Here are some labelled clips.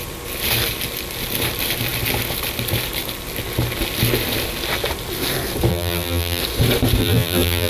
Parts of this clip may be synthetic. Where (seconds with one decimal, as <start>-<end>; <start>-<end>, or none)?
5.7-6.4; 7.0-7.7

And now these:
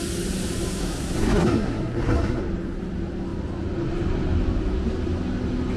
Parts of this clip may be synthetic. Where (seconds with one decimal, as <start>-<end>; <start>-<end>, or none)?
0.8-2.4

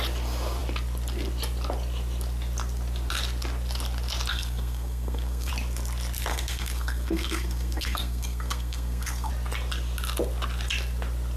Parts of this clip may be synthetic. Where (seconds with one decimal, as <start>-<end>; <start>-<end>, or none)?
4.3-5.5; 6.3-9.3

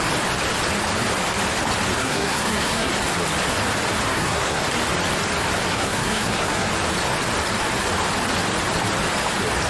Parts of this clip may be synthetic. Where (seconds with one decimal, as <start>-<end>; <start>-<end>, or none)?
2.0-2.9; 4.1-4.6; 5.7-6.7

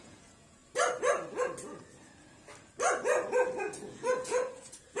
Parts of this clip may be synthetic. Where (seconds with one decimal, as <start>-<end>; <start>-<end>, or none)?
0.0-0.6; 3.6-5.0

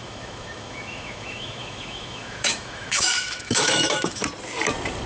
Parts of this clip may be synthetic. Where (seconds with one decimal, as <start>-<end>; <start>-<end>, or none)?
0.0-4.2